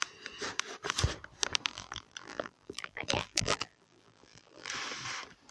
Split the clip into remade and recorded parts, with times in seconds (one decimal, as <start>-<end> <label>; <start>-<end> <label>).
0.0-1.7 recorded; 1.7-4.7 remade; 4.7-5.5 recorded